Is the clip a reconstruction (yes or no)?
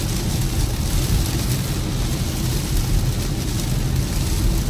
no